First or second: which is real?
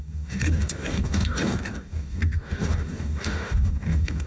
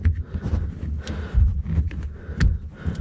second